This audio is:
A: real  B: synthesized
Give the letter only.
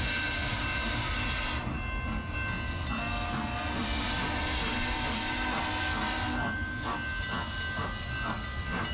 A